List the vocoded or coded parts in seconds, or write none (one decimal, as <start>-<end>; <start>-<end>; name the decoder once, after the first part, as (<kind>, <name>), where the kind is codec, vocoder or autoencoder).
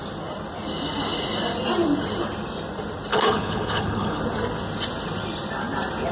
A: 3.1-4.2 (codec, HILCodec)